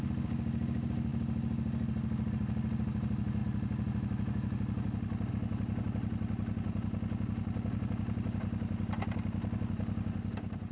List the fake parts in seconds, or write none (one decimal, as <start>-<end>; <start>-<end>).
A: none